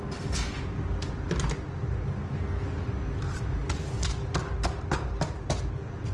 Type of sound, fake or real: real